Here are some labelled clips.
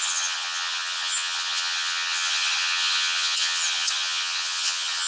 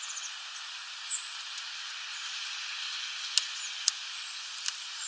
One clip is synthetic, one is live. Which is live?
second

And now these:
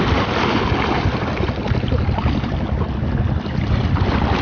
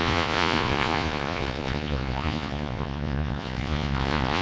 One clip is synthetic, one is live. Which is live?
first